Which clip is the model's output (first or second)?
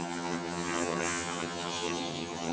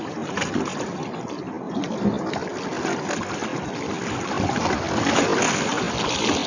first